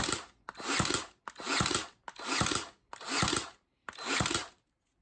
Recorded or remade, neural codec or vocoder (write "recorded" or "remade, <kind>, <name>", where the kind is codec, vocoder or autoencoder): recorded